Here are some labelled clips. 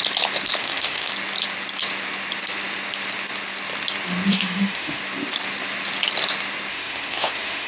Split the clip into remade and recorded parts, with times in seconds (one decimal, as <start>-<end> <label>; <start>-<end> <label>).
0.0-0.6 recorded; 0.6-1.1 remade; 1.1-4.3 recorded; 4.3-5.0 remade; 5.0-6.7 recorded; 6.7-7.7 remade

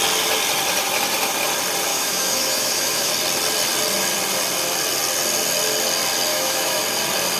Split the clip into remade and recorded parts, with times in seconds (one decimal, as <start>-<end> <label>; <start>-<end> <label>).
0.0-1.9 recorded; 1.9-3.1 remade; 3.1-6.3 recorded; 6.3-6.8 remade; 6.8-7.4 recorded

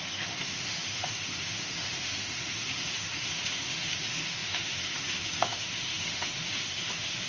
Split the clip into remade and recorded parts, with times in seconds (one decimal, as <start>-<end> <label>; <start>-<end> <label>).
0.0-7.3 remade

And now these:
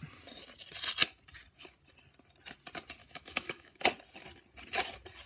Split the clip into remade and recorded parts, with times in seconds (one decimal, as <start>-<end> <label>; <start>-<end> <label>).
0.0-3.0 recorded; 3.0-3.8 remade; 3.8-5.3 recorded

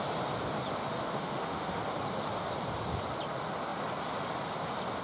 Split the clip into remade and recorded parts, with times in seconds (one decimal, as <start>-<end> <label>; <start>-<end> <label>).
0.0-1.0 recorded; 1.0-1.8 remade; 1.8-5.0 recorded